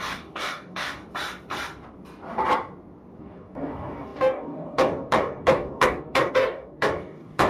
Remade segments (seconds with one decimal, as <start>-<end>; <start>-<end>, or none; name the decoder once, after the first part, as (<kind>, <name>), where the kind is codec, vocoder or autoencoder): 0.0-1.0 (codec, DAC); 3.2-7.5